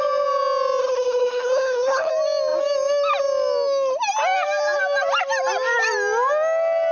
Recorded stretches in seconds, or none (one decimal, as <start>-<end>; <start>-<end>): 0.0-0.8; 2.1-6.9